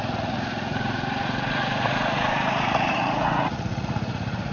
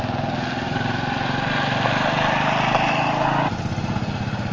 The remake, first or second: first